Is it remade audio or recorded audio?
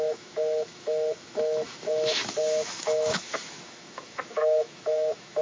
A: remade